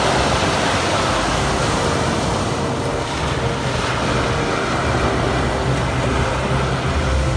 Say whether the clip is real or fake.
real